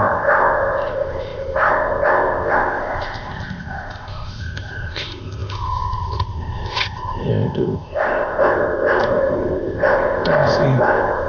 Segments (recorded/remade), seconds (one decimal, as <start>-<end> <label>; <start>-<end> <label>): 0.0-11.3 remade